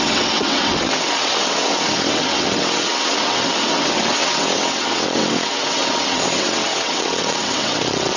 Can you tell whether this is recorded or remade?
remade